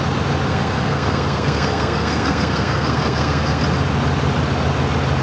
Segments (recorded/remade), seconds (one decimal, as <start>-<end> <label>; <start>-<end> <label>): 0.0-0.5 recorded; 0.5-3.6 remade; 3.6-5.2 recorded